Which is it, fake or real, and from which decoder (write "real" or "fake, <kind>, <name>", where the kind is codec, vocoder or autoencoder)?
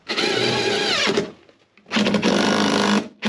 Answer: real